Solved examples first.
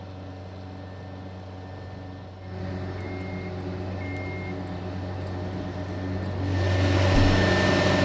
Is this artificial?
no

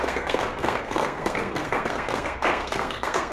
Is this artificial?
yes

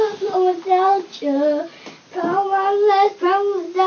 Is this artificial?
no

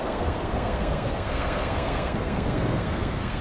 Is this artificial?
yes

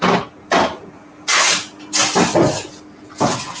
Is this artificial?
no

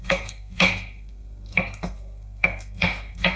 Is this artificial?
yes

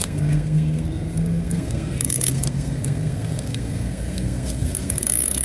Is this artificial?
yes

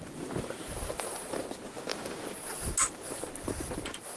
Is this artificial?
no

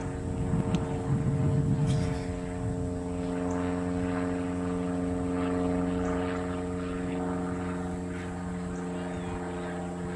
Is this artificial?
no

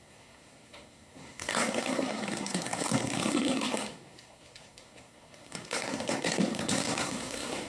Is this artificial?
yes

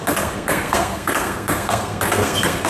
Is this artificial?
yes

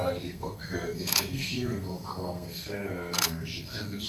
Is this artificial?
yes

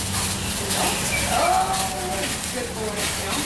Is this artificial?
no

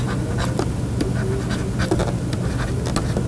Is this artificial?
no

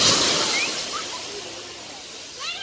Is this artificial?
no